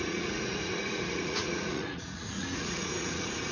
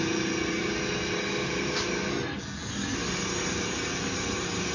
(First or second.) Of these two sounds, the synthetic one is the first